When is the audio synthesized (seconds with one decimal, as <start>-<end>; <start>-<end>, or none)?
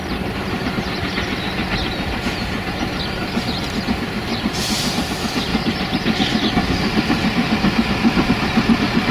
0.0-0.7; 4.3-5.0; 5.5-6.4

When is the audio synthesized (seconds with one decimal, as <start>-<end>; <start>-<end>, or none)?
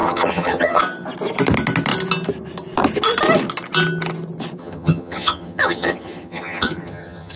0.0-0.8; 4.6-7.4